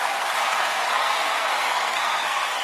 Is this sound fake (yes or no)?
yes